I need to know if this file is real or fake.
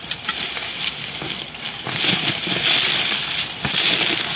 real